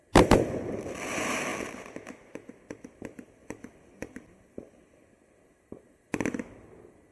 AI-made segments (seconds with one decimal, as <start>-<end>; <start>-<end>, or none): none